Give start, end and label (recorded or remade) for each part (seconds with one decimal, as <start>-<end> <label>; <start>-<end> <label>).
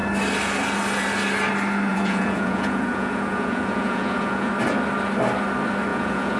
0.0-1.9 recorded; 1.9-4.5 remade; 4.5-5.9 recorded; 5.9-6.4 remade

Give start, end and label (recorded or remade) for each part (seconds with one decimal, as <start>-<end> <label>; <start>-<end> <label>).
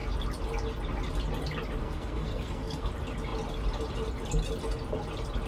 0.0-1.8 recorded; 1.8-2.9 remade; 2.9-5.5 recorded